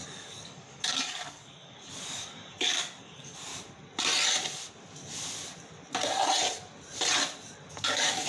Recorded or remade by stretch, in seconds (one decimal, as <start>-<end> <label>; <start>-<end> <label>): 0.0-3.5 remade; 3.5-7.7 recorded; 7.7-8.3 remade